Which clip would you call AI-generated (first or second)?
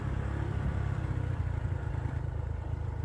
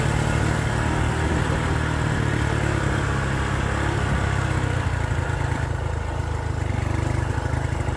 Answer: first